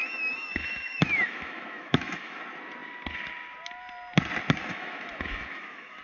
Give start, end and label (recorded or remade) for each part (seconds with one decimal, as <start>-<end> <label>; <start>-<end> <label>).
0.0-2.4 remade; 2.4-4.6 recorded; 4.6-6.0 remade